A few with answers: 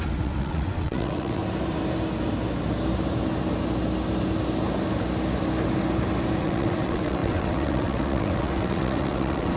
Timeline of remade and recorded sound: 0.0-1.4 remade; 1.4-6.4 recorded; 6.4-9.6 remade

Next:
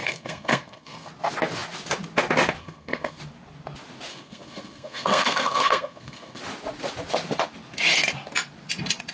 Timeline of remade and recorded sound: 0.0-1.1 remade; 1.1-2.6 recorded; 2.6-3.2 remade; 3.2-4.1 recorded; 4.1-6.4 remade; 6.4-9.1 recorded

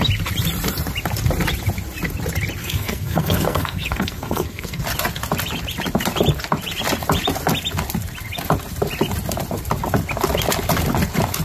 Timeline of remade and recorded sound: 0.0-2.6 recorded; 2.6-4.8 remade; 4.8-11.4 recorded

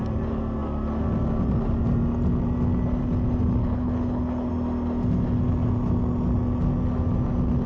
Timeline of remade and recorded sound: 0.0-3.6 recorded; 3.6-4.5 remade; 4.5-7.7 recorded

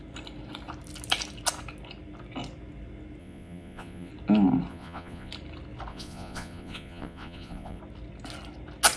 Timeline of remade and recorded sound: 0.0-3.2 recorded; 3.2-4.1 remade; 4.1-4.7 recorded; 4.7-5.3 remade; 5.3-5.9 recorded; 5.9-7.8 remade; 7.8-9.0 recorded

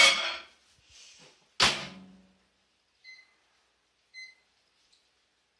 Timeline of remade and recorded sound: 0.0-5.6 recorded